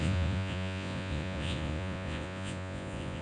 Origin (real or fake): fake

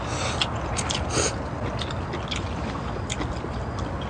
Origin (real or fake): real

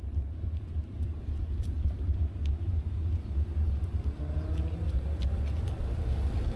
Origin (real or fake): real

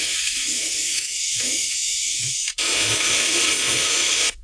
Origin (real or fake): fake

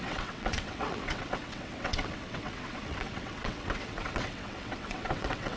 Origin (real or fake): fake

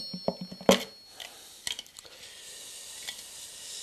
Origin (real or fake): real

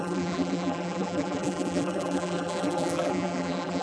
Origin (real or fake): fake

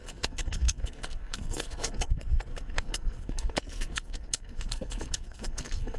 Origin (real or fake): fake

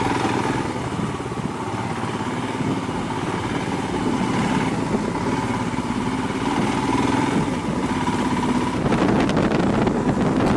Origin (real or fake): real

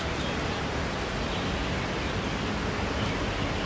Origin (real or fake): real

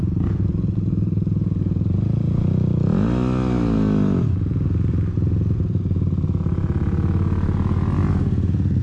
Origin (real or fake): real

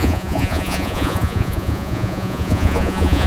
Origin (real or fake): fake